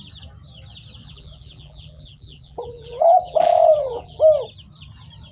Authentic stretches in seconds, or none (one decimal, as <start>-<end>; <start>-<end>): 0.0-1.0; 4.2-5.3